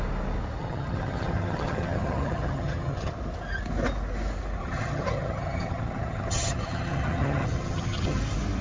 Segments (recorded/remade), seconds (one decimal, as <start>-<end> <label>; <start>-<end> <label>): 0.0-0.6 recorded; 0.6-3.1 remade; 3.1-4.6 recorded; 4.6-8.2 remade; 8.2-8.6 recorded